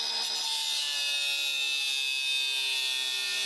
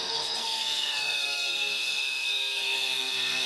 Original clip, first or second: first